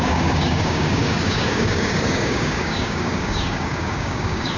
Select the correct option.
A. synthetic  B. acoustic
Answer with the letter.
A